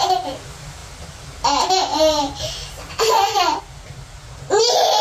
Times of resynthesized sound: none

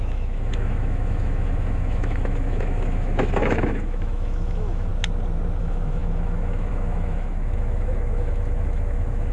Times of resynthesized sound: 0.0-4.9; 5.6-9.3

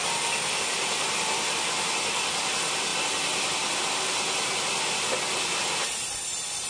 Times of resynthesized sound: none

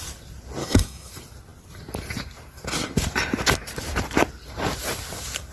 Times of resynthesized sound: 0.6-1.1

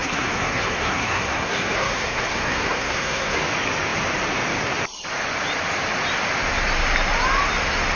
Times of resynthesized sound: 0.0-3.4

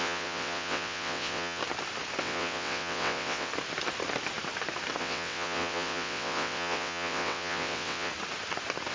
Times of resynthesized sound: 0.0-1.6; 2.2-3.5; 5.0-8.1